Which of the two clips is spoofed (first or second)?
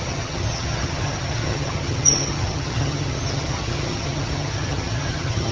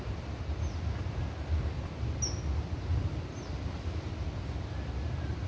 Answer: first